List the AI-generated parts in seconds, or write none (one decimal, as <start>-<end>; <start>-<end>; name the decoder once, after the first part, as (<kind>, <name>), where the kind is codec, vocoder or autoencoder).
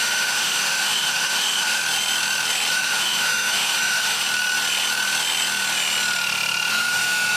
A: 0.0-1.8 (autoencoder, DAC-VAE); 2.7-4.2; 6.7-7.4